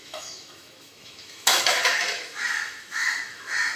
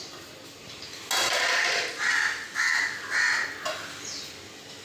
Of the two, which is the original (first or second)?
second